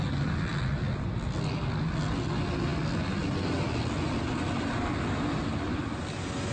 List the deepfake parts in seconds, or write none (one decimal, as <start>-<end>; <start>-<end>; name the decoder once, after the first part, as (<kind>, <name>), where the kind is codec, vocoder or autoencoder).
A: none